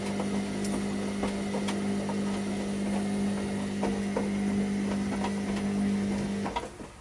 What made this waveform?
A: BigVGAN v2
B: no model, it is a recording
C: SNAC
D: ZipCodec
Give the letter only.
B